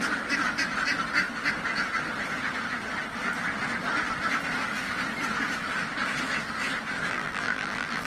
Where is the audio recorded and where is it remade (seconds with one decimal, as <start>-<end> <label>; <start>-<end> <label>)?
0.0-7.1 recorded; 7.1-8.1 remade